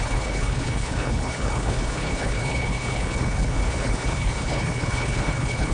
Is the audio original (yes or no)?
no